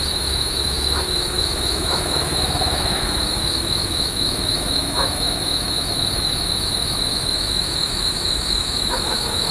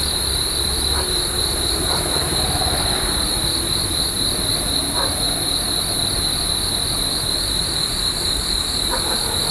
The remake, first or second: first